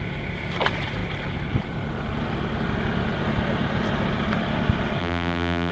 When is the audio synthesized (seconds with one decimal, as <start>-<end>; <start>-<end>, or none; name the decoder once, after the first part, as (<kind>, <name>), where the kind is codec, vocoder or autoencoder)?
5.0-5.7 (vocoder, BigVGAN v2)